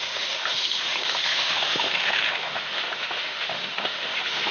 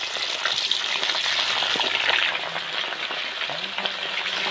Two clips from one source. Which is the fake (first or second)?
first